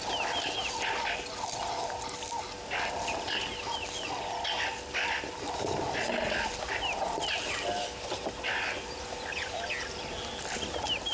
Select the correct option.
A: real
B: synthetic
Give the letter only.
A